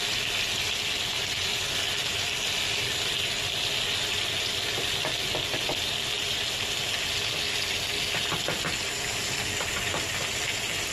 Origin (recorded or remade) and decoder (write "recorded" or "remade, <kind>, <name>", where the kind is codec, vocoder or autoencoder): recorded